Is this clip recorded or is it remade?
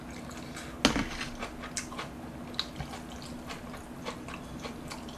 recorded